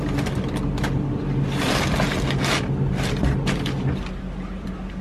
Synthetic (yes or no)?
no